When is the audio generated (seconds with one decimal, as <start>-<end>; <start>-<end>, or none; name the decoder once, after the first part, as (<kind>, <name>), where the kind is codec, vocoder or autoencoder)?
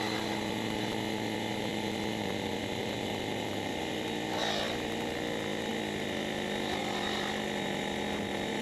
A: 1.7-3.7 (vocoder, BigVGAN v2)